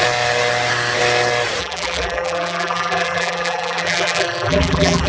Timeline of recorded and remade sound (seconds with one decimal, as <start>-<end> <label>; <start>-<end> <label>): 0.0-1.6 recorded; 1.6-5.1 remade